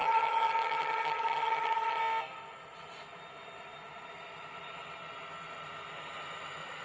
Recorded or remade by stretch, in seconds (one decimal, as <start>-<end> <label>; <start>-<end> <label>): 0.0-2.0 remade; 2.0-6.8 recorded

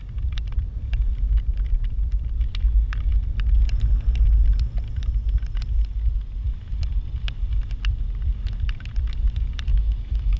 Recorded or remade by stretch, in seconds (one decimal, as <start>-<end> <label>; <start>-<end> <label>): 0.0-9.7 recorded; 9.7-10.4 remade

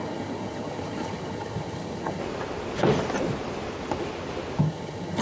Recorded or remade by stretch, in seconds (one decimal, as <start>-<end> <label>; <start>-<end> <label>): 0.0-2.2 remade; 2.2-4.6 recorded; 4.6-5.2 remade

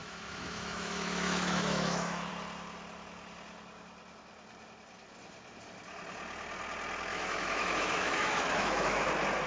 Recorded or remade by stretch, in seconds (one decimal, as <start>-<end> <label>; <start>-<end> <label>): 0.0-2.3 remade; 2.3-7.1 recorded; 7.1-9.1 remade; 9.1-9.5 recorded

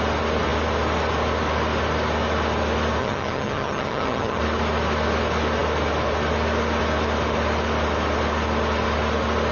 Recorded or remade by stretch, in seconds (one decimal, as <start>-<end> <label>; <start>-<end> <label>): 0.0-3.0 recorded; 3.0-4.4 remade; 4.4-9.5 recorded

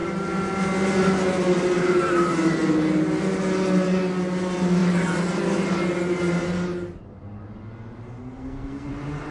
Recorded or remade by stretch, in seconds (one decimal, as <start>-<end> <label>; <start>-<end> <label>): 0.0-8.2 recorded; 8.2-8.9 remade; 8.9-9.3 recorded